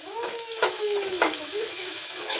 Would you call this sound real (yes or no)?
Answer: no